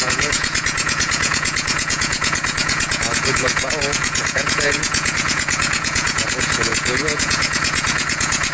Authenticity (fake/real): fake